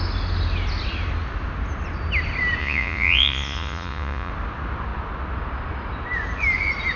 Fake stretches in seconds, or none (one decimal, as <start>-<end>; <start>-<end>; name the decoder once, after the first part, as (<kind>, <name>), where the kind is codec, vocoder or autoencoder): 2.6-4.3 (vocoder, Vocos)